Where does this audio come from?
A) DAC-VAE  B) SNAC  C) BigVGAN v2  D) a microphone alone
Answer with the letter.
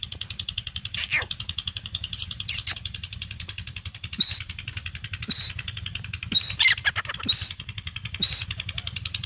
C